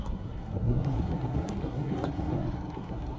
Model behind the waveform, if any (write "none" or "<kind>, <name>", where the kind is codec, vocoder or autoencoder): codec, SNAC